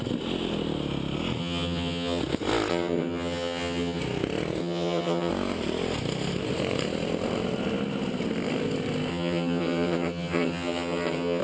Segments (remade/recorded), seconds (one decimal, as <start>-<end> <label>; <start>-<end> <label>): 0.0-1.4 recorded; 1.4-2.2 remade; 2.2-2.7 recorded; 2.7-4.0 remade; 4.0-4.6 recorded; 4.6-5.3 remade; 5.3-9.1 recorded; 9.1-11.4 remade